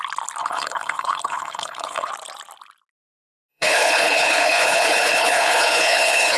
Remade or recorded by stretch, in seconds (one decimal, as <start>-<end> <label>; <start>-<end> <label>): 0.0-0.4 recorded; 0.4-2.1 remade; 2.1-3.5 recorded; 3.5-6.4 remade